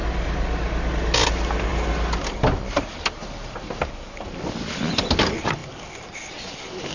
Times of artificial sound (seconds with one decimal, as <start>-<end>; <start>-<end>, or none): none